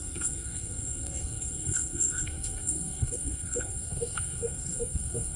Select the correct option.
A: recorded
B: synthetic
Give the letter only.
B